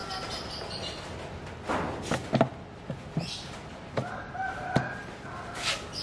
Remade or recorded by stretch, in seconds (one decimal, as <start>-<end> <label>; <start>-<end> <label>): 0.0-6.0 recorded